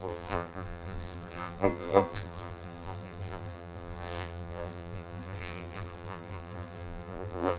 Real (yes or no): no